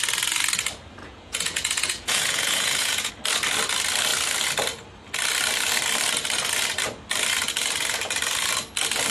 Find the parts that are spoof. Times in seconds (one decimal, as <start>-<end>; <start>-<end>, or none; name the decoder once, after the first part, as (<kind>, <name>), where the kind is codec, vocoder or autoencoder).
1.0-3.1 (vocoder, Vocos)